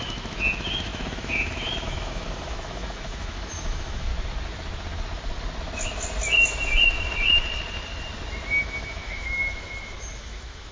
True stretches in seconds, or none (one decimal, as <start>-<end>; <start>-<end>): 4.1-8.6